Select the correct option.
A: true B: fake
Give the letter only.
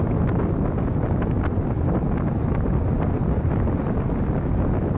A